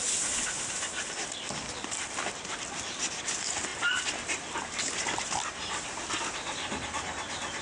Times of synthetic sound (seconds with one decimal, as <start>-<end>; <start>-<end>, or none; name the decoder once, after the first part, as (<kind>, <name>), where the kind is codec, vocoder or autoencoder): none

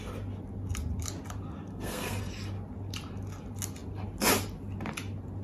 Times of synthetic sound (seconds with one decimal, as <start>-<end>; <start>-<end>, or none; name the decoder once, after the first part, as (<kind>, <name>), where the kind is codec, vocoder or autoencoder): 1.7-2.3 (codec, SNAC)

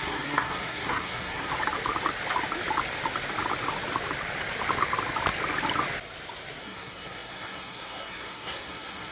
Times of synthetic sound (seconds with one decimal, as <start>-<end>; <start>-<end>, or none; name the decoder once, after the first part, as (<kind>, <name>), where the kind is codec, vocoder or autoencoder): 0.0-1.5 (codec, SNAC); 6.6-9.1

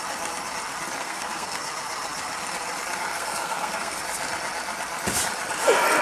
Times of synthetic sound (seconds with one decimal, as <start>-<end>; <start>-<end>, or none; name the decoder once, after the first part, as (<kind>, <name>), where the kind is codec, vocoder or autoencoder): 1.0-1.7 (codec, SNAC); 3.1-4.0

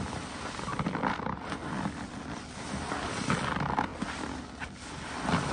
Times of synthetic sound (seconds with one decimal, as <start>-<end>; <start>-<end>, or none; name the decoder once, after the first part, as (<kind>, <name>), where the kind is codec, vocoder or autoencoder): none

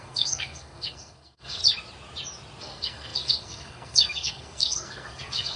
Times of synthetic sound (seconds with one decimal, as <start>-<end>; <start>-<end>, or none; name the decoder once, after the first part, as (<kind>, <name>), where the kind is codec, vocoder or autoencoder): 0.0-1.6 (codec, SNAC); 2.6-5.6

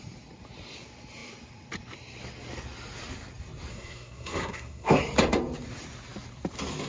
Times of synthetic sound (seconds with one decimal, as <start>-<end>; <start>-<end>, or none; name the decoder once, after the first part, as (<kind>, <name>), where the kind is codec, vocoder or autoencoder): 3.7-5.0 (codec, SNAC)

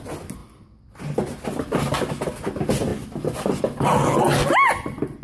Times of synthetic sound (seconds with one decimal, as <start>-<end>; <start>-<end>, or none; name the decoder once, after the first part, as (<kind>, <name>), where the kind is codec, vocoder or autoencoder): none